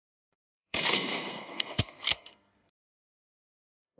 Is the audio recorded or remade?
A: remade